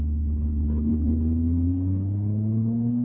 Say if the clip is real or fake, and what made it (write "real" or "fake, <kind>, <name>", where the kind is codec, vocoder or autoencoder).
fake, codec, HILCodec